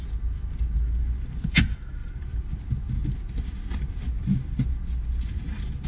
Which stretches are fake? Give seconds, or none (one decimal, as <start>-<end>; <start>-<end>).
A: none